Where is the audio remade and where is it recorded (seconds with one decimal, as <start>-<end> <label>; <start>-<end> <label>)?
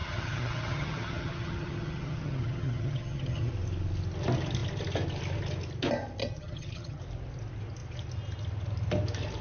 0.0-3.5 remade; 3.5-6.2 recorded; 6.2-7.0 remade; 7.0-9.4 recorded